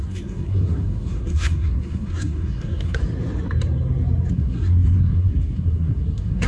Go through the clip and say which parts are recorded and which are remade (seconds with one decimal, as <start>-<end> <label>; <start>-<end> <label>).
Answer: 0.0-3.0 remade; 3.0-4.3 recorded; 4.3-6.5 remade